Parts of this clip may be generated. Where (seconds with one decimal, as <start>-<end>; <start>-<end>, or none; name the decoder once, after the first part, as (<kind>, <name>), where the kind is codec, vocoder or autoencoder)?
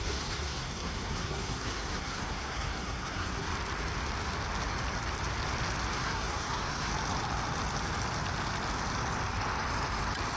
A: 0.0-3.5 (codec, SNAC); 6.0-6.9